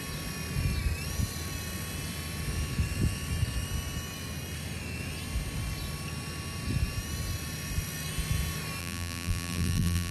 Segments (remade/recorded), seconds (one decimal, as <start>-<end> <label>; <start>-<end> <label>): 0.0-8.8 recorded; 8.8-10.1 remade